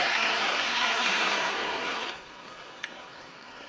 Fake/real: fake